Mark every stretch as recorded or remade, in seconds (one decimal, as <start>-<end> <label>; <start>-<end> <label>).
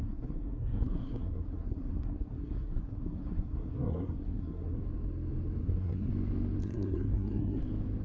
0.0-4.8 remade; 4.8-5.6 recorded; 5.6-6.1 remade; 6.1-6.6 recorded; 6.6-7.6 remade; 7.6-8.0 recorded